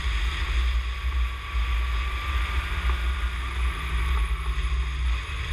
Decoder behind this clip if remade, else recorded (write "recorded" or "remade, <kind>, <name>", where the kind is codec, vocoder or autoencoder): recorded